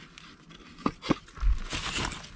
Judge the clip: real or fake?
real